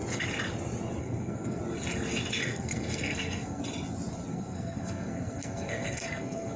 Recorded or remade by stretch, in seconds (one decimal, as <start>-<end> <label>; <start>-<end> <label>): 0.0-1.0 recorded; 1.0-1.6 remade; 1.6-2.4 recorded; 2.4-3.6 remade; 3.6-4.3 recorded; 4.3-6.6 remade